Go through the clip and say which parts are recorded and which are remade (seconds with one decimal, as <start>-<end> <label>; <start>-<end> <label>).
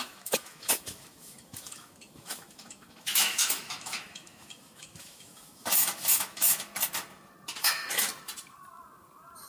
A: 0.0-6.7 remade; 6.7-7.6 recorded; 7.6-8.1 remade; 8.1-9.5 recorded